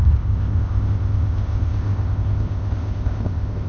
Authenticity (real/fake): fake